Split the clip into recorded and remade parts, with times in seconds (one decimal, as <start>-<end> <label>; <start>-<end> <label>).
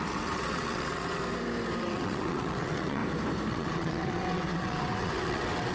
0.0-1.2 remade; 1.2-1.8 recorded; 1.8-3.0 remade; 3.0-3.5 recorded; 3.5-5.7 remade